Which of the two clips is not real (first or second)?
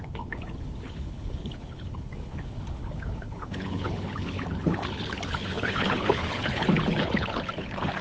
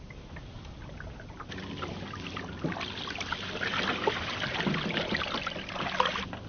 first